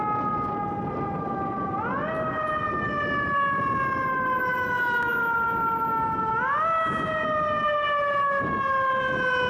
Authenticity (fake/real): real